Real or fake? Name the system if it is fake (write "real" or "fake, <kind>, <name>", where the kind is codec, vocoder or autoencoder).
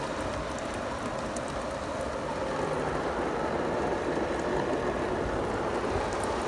real